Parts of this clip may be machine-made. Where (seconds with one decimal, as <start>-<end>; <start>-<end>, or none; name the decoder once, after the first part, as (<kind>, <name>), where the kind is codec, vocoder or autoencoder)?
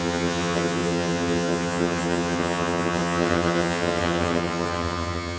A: 0.0-5.4 (vocoder, HiFi-GAN)